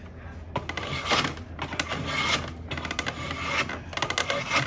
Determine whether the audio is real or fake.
real